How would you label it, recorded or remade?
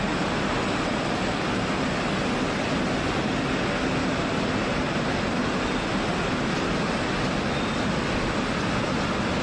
recorded